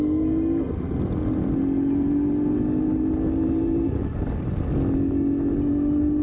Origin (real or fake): real